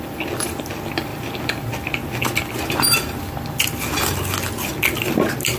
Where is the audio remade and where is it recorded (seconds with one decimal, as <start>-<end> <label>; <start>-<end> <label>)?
0.0-5.6 recorded